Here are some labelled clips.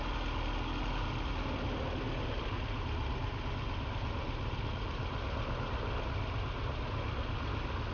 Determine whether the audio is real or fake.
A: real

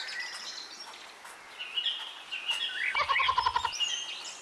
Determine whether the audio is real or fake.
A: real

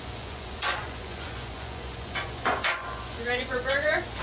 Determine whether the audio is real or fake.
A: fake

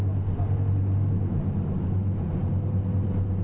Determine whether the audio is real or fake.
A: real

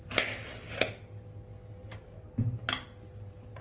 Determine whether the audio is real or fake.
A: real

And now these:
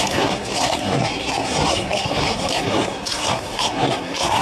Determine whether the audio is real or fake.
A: fake